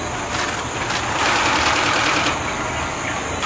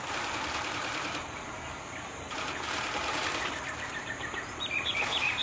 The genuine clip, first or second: first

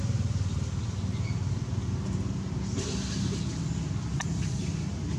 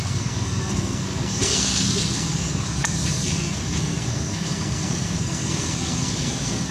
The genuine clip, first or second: first